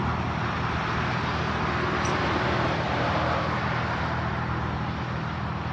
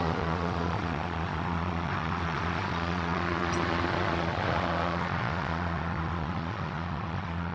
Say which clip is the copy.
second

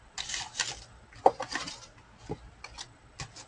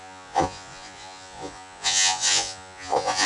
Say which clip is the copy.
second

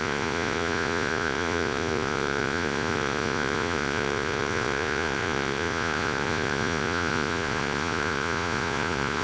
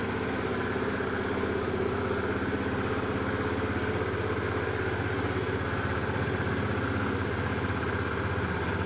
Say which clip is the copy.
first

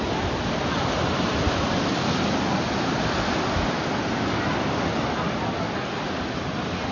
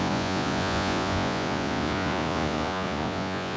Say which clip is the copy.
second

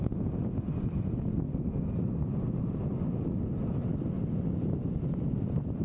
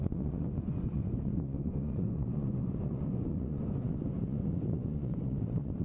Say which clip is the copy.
second